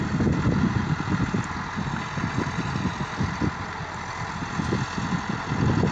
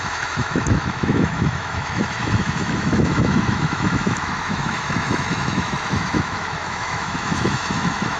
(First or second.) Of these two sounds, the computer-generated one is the second